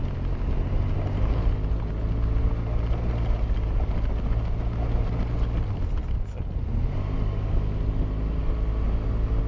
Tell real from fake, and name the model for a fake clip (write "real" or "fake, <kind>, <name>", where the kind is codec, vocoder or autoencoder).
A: real